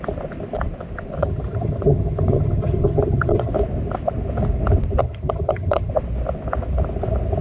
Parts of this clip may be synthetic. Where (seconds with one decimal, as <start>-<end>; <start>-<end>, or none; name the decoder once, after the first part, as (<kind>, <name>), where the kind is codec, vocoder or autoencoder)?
1.2-3.5 (vocoder, HiFi-GAN); 5.0-5.9